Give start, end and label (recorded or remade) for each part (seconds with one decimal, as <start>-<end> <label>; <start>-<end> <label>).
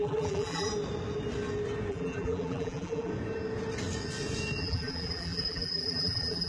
0.0-0.7 remade; 0.7-1.9 recorded; 1.9-3.1 remade; 3.1-4.6 recorded; 4.6-6.5 remade